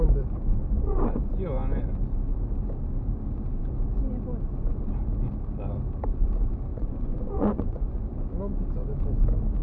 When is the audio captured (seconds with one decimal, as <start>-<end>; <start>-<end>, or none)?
0.0-0.6; 1.3-6.7; 8.0-9.6